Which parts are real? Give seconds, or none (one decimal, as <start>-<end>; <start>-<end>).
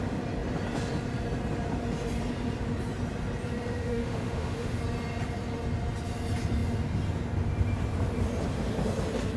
0.0-3.8; 4.8-9.4